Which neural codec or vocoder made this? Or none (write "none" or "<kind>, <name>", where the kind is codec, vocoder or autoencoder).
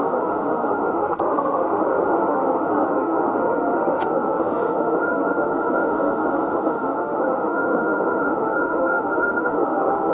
autoencoder, DAC-VAE